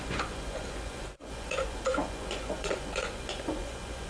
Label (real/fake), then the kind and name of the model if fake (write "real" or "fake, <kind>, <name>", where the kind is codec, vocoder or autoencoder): fake, vocoder, Vocos